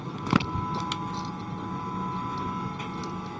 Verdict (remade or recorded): recorded